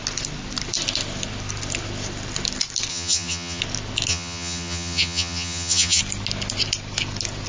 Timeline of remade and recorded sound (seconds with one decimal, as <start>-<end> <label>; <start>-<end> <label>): 0.0-2.9 recorded; 2.9-3.6 remade; 3.6-4.1 recorded; 4.1-6.0 remade; 6.0-7.5 recorded